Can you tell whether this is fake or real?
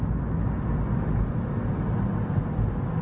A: real